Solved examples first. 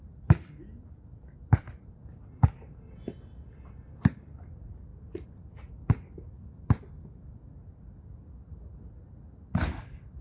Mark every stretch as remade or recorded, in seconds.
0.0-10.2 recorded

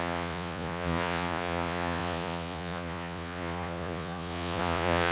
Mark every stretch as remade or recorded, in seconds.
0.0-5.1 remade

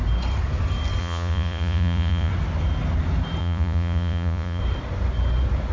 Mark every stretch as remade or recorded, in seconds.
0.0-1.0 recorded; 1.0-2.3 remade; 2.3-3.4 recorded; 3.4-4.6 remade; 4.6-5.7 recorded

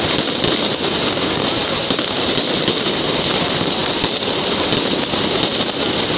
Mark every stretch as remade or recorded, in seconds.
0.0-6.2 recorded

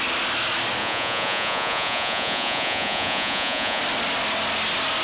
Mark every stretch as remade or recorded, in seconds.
0.0-0.8 recorded; 0.8-3.8 remade; 3.8-5.0 recorded

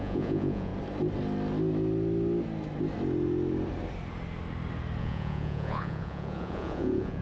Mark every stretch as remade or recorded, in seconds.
0.0-0.7 remade; 0.7-5.0 recorded; 5.0-7.2 remade